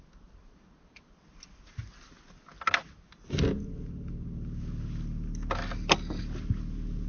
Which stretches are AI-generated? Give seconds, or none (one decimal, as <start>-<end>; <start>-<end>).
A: none